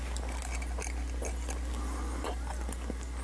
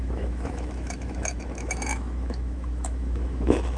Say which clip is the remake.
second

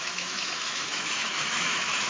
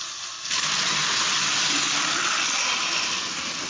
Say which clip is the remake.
first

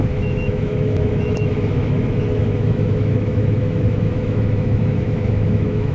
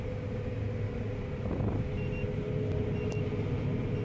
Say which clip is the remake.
first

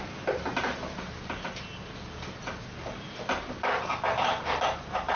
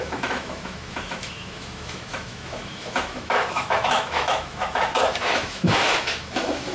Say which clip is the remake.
second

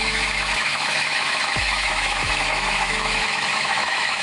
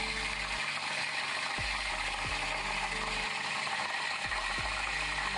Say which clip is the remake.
first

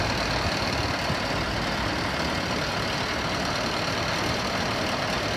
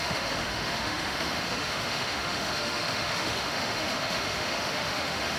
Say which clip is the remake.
second